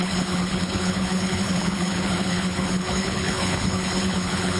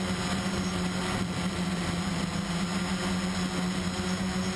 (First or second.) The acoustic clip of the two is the second